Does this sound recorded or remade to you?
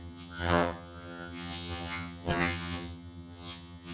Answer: remade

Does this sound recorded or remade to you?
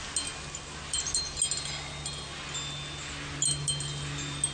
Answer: recorded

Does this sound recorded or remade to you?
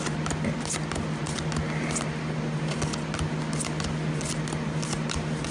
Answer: recorded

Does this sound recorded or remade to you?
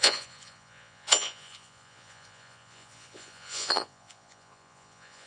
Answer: remade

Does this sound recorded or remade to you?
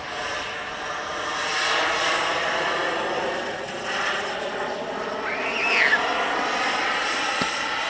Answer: recorded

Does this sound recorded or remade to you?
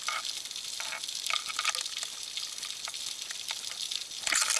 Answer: recorded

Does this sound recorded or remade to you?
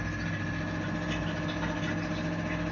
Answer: recorded